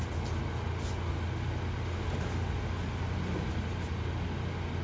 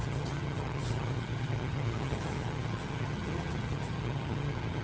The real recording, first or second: first